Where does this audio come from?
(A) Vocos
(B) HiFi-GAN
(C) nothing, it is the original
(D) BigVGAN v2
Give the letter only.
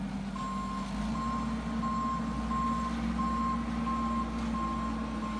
C